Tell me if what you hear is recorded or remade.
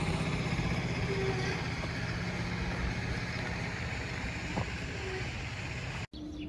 recorded